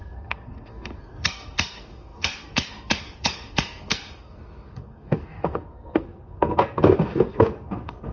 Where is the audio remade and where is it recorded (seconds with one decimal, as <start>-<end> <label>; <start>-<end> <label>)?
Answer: 0.0-8.1 remade